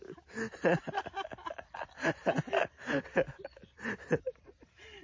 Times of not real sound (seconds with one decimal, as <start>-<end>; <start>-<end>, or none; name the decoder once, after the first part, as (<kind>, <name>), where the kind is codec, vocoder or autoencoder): none